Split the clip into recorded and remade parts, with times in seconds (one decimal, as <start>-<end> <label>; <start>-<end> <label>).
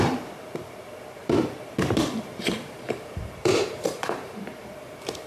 0.0-1.2 recorded; 1.2-4.4 remade; 4.4-5.3 recorded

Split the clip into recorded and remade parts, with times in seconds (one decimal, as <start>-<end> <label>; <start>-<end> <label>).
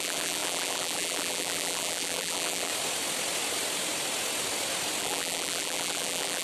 0.0-2.7 remade; 2.7-5.0 recorded; 5.0-6.4 remade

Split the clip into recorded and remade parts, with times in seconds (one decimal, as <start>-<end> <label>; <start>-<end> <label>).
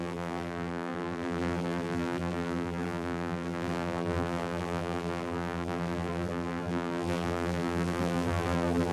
0.0-8.9 remade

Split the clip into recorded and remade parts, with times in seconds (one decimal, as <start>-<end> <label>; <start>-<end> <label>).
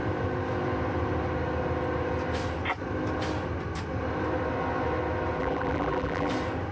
0.0-5.4 recorded; 5.4-6.3 remade; 6.3-6.7 recorded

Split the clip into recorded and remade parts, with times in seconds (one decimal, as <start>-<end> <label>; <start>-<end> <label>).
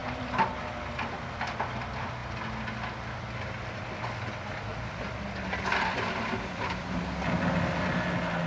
0.0-0.7 remade; 0.7-4.7 recorded; 4.7-7.0 remade; 7.0-8.5 recorded